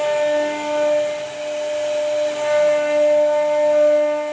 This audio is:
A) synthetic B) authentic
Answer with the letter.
B